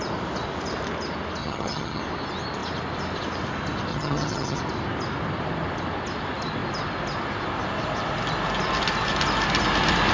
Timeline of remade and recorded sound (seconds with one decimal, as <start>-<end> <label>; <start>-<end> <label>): 0.0-1.4 recorded; 1.4-2.0 remade; 2.0-3.9 recorded; 3.9-4.6 remade; 4.6-10.1 recorded